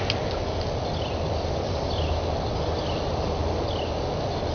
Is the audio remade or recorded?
recorded